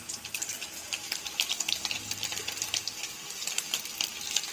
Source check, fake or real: real